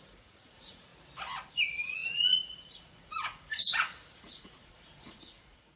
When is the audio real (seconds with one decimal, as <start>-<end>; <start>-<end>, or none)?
0.9-1.5